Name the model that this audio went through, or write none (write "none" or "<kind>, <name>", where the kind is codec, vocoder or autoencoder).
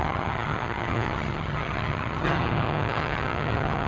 vocoder, HiFi-GAN